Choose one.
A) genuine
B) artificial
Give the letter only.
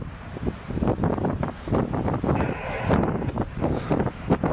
A